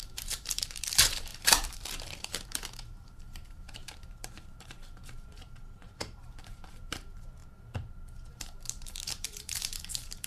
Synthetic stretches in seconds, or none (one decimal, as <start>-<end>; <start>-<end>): 0.0-7.4; 8.3-10.3